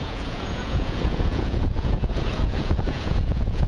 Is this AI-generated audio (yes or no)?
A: yes